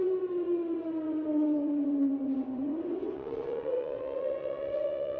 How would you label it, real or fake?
fake